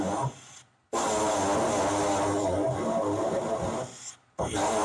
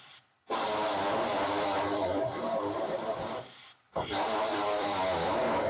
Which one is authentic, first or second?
first